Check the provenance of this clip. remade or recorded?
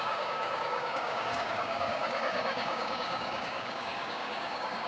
remade